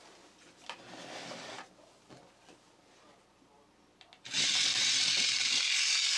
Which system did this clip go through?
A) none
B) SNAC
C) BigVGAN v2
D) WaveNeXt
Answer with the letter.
A